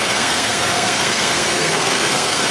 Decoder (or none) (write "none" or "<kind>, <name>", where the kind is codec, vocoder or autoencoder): codec, SNAC